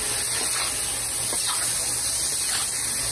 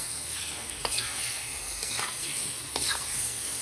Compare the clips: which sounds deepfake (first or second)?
second